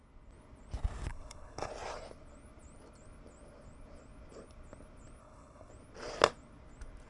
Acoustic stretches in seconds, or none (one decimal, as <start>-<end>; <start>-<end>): 0.0-1.1; 1.7-5.2; 5.7-7.1